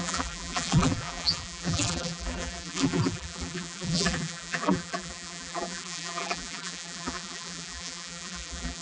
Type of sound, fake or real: fake